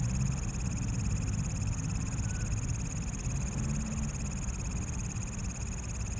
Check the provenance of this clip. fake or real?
real